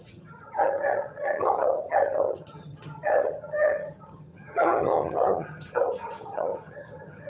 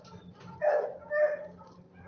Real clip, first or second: second